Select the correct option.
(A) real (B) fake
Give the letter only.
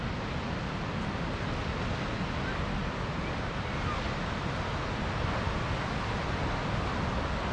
A